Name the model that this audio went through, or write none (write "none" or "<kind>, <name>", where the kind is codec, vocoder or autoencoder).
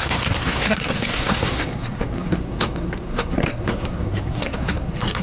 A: codec, SNAC